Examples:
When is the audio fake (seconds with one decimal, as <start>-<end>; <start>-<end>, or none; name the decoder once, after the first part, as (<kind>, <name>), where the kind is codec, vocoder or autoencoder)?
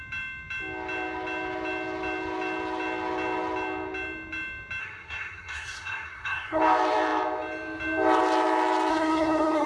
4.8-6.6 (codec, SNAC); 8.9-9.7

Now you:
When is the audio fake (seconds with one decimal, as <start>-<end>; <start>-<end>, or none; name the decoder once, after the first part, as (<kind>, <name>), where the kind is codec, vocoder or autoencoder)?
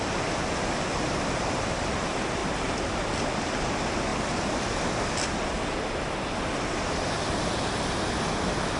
none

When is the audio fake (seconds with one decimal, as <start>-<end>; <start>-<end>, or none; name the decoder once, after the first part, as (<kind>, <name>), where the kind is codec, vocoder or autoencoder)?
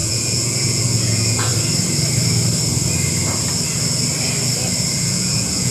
0.0-1.5 (vocoder, Vocos); 4.9-5.7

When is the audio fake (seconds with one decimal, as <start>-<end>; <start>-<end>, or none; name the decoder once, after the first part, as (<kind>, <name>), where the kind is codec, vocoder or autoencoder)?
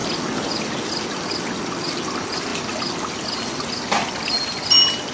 none